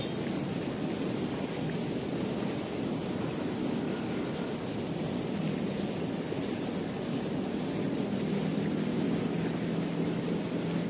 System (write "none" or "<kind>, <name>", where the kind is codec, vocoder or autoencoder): none